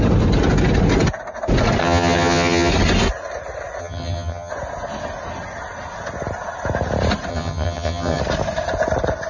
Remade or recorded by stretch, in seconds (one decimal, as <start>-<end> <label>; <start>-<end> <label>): 0.0-1.8 recorded; 1.8-2.7 remade; 2.7-3.8 recorded; 3.8-4.5 remade; 4.5-7.3 recorded; 7.3-8.2 remade; 8.2-9.3 recorded